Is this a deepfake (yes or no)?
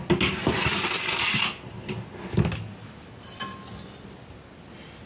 no